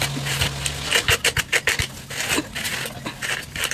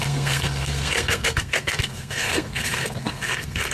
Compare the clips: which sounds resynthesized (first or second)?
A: second